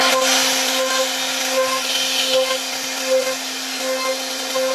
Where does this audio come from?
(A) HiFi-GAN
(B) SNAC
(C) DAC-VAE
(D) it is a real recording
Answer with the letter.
D